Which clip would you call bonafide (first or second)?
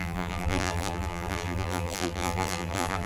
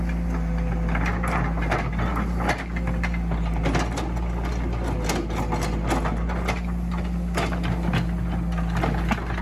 second